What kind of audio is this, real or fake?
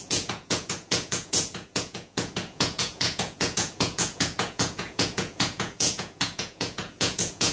fake